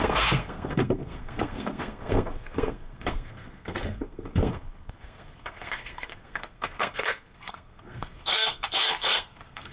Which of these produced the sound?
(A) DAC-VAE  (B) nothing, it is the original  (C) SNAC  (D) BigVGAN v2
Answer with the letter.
C